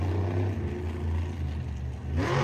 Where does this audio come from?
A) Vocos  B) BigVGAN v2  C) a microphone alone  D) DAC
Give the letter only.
C